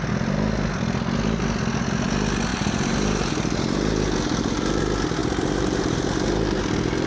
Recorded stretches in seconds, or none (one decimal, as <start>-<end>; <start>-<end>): 0.0-2.5; 4.8-5.2